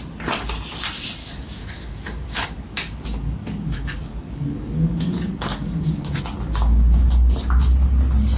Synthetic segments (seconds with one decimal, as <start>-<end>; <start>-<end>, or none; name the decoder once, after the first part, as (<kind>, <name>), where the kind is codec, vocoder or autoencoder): 1.2-6.2 (codec, DAC)